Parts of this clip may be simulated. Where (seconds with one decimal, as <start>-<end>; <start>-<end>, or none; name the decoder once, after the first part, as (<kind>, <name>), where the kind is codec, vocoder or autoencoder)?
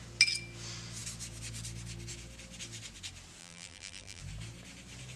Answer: 3.4-4.2 (vocoder, BigVGAN v2)